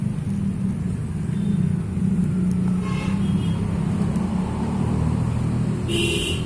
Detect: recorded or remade recorded